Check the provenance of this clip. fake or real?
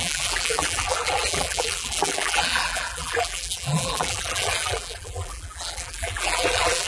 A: fake